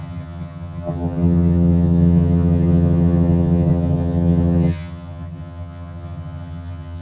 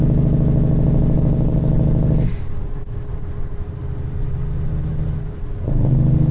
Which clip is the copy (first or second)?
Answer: first